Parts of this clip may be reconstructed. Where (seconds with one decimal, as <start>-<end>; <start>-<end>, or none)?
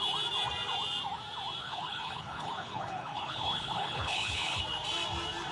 1.6-4.6